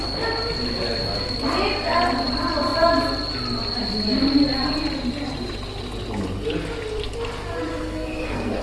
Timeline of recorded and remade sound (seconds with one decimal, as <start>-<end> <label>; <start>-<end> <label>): 0.0-7.7 recorded; 7.7-8.6 remade